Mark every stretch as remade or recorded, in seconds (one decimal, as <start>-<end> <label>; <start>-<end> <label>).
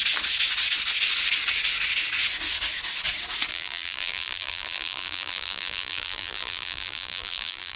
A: 0.0-3.5 recorded; 3.5-7.8 remade